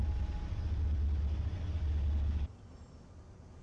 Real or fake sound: real